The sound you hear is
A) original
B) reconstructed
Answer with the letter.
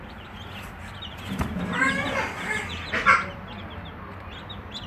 A